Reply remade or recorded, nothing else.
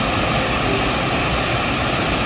recorded